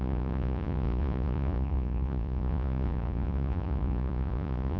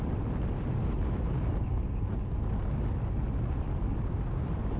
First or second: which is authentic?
second